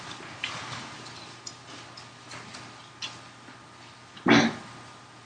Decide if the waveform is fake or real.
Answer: real